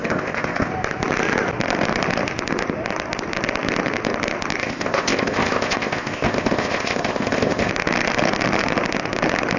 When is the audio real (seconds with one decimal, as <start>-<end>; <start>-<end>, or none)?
0.7-4.6; 7.7-9.6